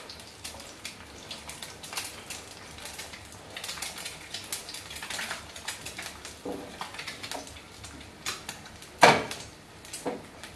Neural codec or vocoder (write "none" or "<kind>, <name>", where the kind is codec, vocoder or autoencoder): none